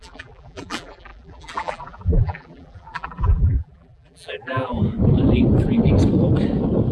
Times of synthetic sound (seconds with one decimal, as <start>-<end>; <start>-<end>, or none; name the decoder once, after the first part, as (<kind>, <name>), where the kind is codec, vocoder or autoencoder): 0.0-4.8 (vocoder, BigVGAN v2)